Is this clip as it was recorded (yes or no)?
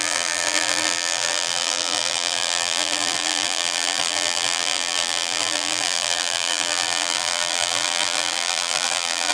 no